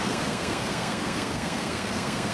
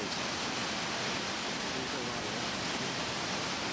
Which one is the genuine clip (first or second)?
second